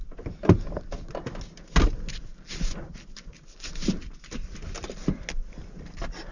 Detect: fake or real real